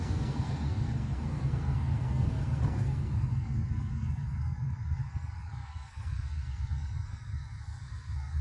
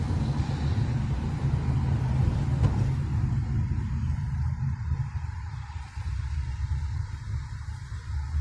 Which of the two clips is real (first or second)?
second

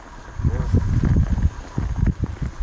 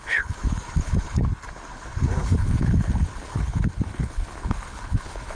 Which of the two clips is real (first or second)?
first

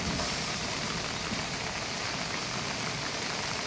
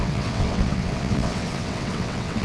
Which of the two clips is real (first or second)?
first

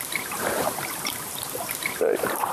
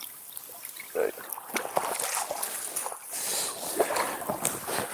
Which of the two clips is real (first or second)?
second